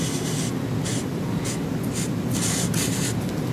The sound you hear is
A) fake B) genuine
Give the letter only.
B